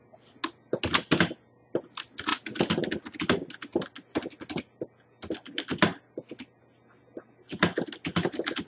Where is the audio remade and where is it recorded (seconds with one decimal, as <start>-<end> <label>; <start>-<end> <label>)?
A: 0.0-8.7 recorded